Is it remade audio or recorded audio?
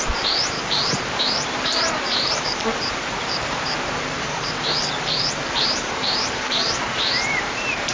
remade